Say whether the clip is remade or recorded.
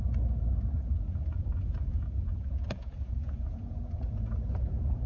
remade